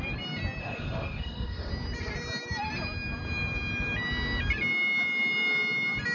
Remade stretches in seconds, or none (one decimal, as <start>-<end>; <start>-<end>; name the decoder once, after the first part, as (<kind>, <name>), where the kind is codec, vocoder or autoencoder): 0.6-1.7 (autoencoder, DAC-VAE)